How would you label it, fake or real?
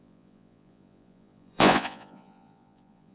fake